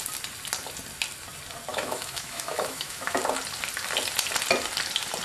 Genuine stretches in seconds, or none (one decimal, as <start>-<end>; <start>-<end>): 0.0-1.7; 3.2-5.2